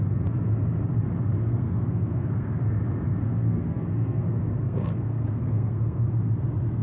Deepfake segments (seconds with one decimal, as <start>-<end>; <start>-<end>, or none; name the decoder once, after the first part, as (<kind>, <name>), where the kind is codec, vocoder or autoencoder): 1.5-2.7 (codec, SNAC); 3.2-6.2